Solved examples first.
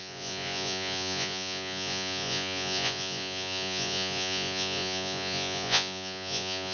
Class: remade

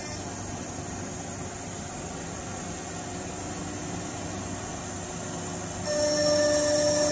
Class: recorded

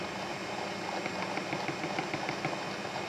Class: recorded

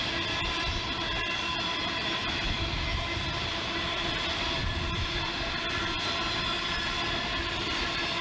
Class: recorded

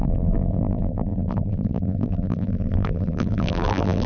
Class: remade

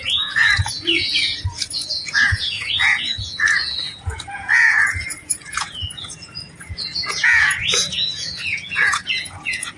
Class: remade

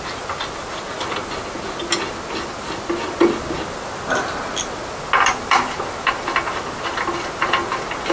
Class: recorded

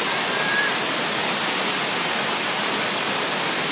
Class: recorded